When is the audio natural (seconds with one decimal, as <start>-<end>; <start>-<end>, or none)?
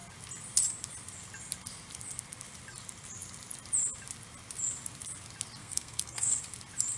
0.0-5.6; 6.4-7.0